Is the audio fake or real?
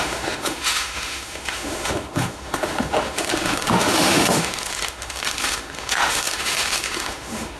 fake